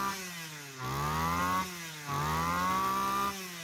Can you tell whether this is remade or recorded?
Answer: recorded